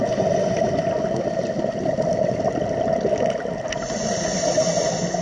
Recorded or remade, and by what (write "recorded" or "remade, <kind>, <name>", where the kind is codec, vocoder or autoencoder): recorded